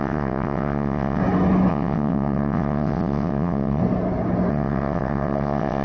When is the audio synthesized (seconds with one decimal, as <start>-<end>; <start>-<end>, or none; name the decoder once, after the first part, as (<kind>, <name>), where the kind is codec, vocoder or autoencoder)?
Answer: 0.0-1.2 (vocoder, WaveNeXt); 1.7-3.8; 4.5-5.8